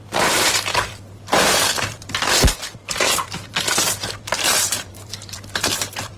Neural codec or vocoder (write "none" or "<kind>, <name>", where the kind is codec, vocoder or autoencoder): vocoder, BigVGAN v2